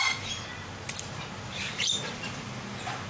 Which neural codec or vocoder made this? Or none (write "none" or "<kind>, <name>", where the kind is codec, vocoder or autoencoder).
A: vocoder, BigVGAN v2